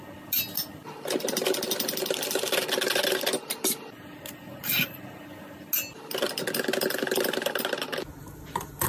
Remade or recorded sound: recorded